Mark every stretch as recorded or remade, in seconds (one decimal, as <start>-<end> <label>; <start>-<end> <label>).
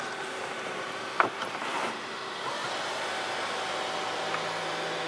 0.0-5.1 recorded